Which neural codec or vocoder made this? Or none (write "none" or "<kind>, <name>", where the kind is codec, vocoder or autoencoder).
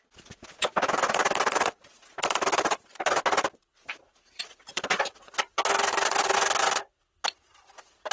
none